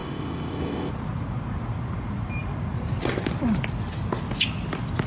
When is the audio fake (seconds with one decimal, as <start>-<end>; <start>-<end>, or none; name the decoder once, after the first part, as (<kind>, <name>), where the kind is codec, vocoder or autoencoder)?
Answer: 0.0-0.9 (codec, ZipCodec)